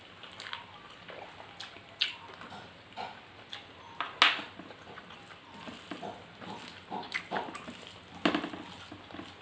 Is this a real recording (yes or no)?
yes